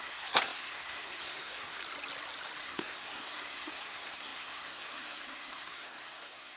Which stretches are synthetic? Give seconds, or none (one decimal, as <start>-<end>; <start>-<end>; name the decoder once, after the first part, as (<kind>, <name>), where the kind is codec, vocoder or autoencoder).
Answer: 0.0-1.8 (codec, SNAC); 2.6-6.6